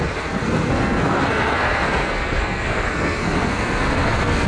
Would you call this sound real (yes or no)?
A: no